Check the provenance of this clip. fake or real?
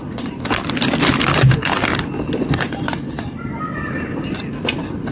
real